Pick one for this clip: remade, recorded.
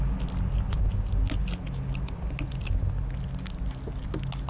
recorded